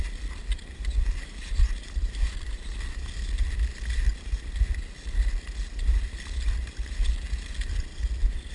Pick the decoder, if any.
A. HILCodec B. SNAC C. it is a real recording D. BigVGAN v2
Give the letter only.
C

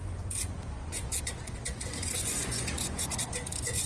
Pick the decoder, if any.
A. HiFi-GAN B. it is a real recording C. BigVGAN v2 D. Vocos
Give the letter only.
D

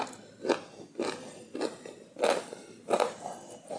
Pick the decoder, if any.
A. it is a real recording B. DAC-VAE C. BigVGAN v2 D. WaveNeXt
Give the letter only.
A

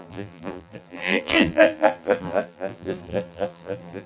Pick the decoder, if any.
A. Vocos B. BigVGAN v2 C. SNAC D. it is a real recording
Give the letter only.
B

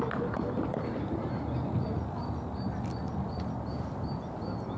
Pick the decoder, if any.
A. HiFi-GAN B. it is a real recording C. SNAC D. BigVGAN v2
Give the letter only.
B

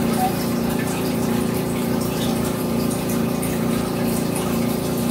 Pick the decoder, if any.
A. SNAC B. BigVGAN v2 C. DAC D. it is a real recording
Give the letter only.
B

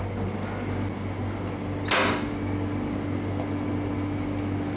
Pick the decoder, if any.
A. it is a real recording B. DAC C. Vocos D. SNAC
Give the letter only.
A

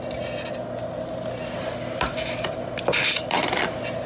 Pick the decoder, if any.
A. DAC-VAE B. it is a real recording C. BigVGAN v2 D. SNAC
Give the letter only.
B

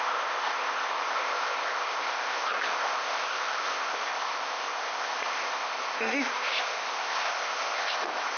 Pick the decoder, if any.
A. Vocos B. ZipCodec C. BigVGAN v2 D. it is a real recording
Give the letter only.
B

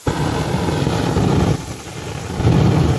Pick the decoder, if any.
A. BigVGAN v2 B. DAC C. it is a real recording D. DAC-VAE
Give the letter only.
C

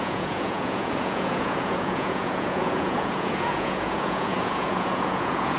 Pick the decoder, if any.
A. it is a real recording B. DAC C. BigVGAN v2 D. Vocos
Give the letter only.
D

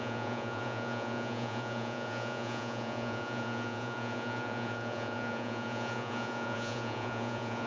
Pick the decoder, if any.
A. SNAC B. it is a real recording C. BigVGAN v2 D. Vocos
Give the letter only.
D